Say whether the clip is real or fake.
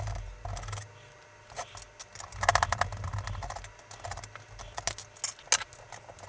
real